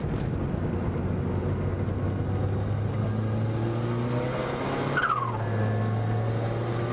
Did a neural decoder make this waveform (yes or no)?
no